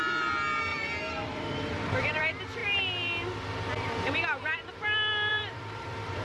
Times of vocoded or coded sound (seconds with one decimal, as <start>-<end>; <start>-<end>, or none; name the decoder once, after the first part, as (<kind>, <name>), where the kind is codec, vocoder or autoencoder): 0.7-2.2 (vocoder, BigVGAN v2); 5.3-6.2